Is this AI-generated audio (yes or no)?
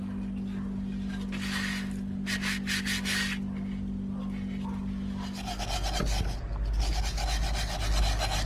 no